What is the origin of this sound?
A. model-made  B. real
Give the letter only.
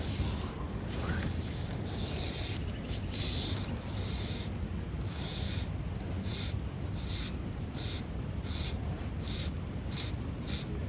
B